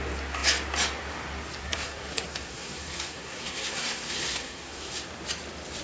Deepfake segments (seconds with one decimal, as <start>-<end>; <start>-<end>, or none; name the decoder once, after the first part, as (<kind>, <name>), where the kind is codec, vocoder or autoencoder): 1.6-5.1 (codec, SNAC)